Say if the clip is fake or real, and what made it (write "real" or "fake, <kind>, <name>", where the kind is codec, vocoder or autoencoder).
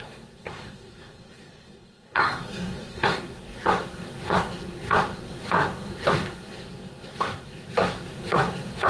fake, codec, SNAC